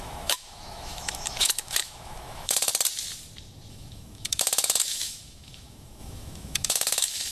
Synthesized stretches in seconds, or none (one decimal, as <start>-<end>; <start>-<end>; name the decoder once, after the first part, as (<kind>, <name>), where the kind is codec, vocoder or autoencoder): 0.0-2.7 (autoencoder, DAC-VAE); 3.7-7.3